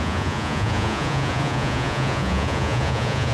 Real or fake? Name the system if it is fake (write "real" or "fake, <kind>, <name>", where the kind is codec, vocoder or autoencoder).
fake, vocoder, Vocos